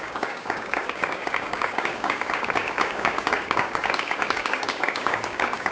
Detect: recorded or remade remade